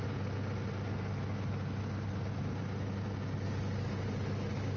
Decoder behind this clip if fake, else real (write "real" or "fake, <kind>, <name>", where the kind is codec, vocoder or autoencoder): real